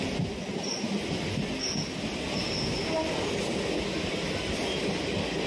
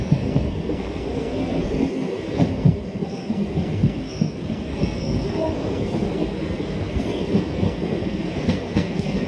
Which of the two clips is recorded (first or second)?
first